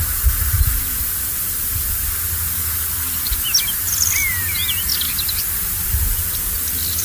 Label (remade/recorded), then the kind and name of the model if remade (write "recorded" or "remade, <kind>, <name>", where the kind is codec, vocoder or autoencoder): recorded